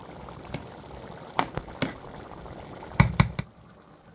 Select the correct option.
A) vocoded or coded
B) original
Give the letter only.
B